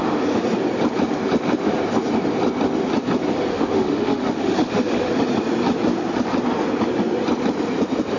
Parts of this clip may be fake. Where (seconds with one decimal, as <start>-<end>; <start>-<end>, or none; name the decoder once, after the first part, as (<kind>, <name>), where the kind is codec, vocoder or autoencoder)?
3.5-5.1 (autoencoder, DAC-VAE)